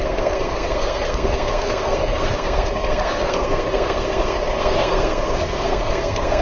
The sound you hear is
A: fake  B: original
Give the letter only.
A